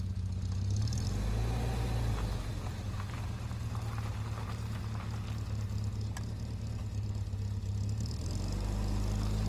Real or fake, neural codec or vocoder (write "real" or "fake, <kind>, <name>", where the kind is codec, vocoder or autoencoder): real